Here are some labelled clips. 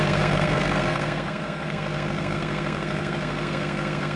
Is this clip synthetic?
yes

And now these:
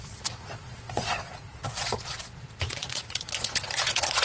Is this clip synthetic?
yes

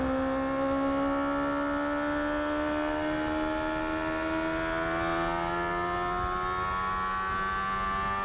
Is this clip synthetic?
no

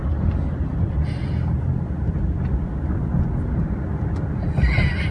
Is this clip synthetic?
no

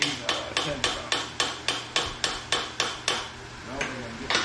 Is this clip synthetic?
no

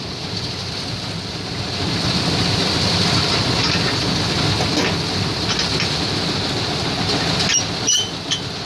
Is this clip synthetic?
no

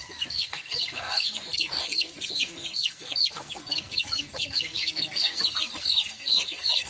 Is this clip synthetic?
yes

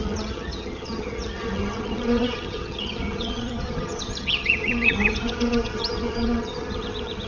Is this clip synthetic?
yes